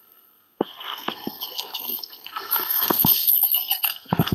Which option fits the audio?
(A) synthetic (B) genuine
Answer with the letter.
A